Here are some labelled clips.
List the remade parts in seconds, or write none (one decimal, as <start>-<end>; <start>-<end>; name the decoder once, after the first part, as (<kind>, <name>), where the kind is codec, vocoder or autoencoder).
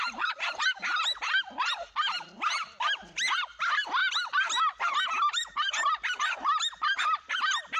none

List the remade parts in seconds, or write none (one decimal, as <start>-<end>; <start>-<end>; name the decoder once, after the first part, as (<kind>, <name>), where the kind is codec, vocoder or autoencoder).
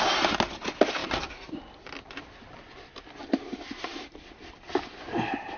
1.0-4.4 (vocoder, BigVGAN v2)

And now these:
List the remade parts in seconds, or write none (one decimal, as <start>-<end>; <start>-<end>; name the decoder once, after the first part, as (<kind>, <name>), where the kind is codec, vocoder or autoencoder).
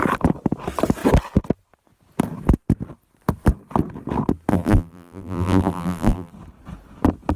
4.5-6.3 (vocoder, BigVGAN v2)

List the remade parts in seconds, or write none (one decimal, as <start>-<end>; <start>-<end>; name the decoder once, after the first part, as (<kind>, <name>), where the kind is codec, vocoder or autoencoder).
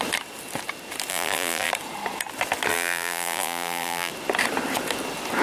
1.1-1.7 (vocoder, BigVGAN v2); 2.7-4.1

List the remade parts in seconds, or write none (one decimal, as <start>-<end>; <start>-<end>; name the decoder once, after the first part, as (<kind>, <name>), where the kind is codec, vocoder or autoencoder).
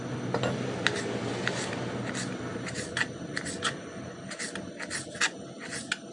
2.5-4.4 (vocoder, BigVGAN v2)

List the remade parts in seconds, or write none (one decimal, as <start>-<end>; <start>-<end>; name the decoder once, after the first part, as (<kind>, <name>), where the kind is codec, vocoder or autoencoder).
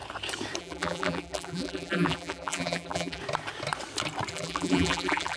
0.6-3.2 (vocoder, BigVGAN v2); 4.3-5.4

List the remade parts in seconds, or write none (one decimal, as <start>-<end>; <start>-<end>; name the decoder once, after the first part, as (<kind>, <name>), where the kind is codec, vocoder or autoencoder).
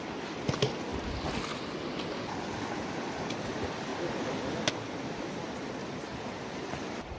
0.0-0.9 (vocoder, BigVGAN v2); 3.1-3.9; 4.7-6.1; 6.7-7.2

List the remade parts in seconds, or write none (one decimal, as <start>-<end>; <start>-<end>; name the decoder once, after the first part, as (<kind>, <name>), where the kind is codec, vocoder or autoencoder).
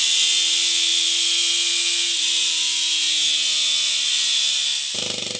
none